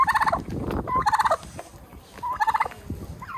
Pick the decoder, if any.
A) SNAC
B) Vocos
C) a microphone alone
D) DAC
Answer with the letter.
C